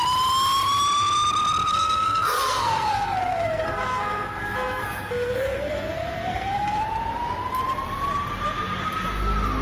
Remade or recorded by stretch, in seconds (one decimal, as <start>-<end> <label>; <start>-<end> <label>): 0.0-1.7 recorded; 1.7-6.8 remade; 6.8-9.6 recorded